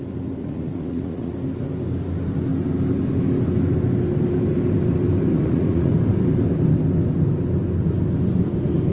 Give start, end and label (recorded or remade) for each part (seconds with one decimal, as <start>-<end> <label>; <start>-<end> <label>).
0.0-0.4 recorded; 0.4-1.3 remade; 1.3-5.3 recorded; 5.3-5.9 remade; 5.9-8.9 recorded